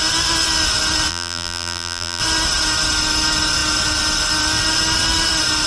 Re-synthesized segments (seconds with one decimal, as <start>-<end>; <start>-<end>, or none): 1.1-2.2